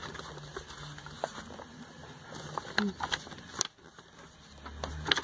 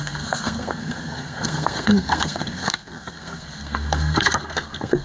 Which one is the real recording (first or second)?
first